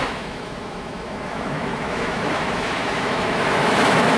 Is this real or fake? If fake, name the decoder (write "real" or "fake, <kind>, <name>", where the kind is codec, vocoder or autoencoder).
fake, autoencoder, DAC-VAE